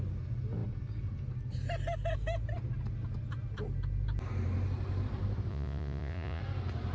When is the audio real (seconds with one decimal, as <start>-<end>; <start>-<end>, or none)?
0.0-5.5; 6.4-6.9